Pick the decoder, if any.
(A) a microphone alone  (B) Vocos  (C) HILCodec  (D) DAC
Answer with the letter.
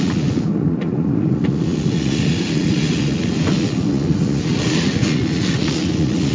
B